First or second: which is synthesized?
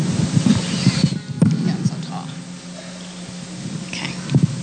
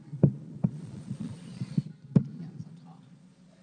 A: second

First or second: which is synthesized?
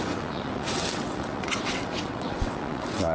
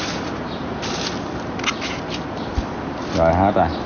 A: first